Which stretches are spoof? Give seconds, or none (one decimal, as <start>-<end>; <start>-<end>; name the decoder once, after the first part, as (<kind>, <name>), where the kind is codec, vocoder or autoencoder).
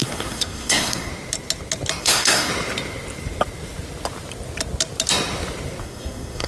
0.0-1.1 (codec, SNAC); 2.0-2.5; 5.8-6.5